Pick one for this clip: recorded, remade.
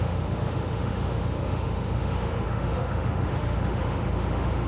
remade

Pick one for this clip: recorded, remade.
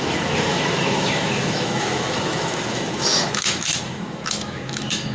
remade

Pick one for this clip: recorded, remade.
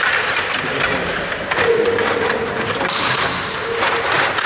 recorded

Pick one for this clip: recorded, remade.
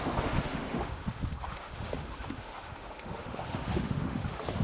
remade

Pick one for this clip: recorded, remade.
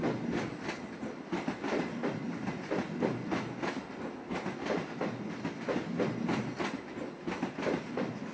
recorded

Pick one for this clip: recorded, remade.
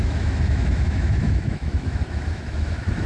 remade